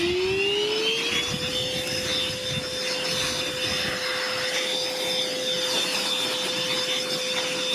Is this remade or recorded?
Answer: recorded